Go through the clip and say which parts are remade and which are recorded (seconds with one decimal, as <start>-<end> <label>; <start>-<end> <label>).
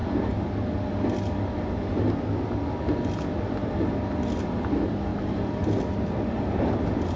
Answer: 0.0-5.1 recorded; 5.1-6.6 remade; 6.6-7.2 recorded